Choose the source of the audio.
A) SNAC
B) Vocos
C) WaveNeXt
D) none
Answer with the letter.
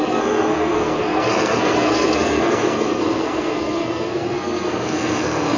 A